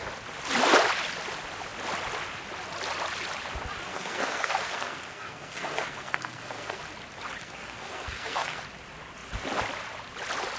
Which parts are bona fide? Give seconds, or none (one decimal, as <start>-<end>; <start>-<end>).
0.0-3.9; 6.8-7.4; 8.6-10.6